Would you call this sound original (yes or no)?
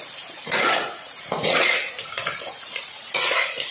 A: no